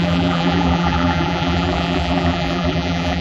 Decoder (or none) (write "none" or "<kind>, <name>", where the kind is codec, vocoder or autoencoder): vocoder, BigVGAN v2